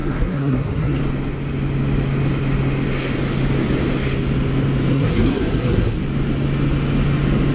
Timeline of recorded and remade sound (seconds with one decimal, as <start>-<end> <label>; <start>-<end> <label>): 0.0-1.0 remade; 1.0-4.9 recorded; 4.9-6.0 remade; 6.0-7.5 recorded